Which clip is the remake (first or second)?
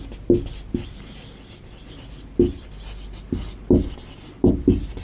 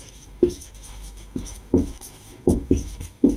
second